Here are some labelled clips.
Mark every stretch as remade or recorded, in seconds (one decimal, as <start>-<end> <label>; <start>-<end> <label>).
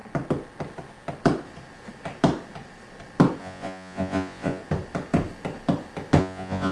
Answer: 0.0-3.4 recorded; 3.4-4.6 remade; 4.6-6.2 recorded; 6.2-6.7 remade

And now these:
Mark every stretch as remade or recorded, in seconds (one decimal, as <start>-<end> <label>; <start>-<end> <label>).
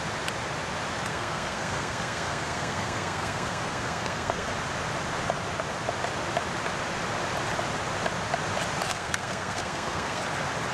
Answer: 0.0-1.1 recorded; 1.1-4.5 remade; 4.5-8.9 recorded; 8.9-10.2 remade; 10.2-10.7 recorded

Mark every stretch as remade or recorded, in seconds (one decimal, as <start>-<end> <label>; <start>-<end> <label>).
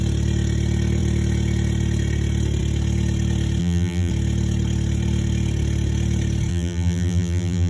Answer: 0.0-3.6 recorded; 3.6-4.1 remade; 4.1-6.5 recorded; 6.5-7.7 remade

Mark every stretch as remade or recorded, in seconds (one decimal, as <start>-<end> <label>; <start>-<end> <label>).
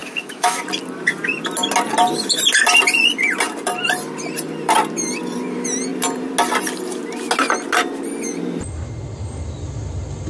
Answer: 0.0-0.6 remade; 0.6-10.3 recorded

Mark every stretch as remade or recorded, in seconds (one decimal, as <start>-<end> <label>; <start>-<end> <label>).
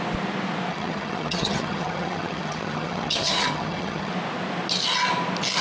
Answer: 0.0-0.7 recorded; 0.7-4.1 remade; 4.1-5.6 recorded